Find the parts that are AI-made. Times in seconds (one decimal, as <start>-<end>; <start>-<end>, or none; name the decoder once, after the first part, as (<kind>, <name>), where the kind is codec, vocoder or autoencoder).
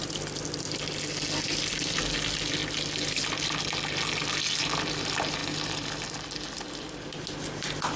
none